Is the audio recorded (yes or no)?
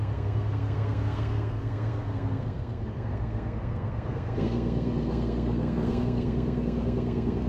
no